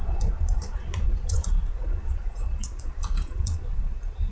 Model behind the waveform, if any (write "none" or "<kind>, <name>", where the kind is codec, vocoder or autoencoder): vocoder, Vocos